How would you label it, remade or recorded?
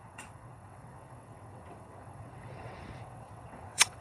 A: remade